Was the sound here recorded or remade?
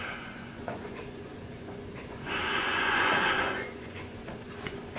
remade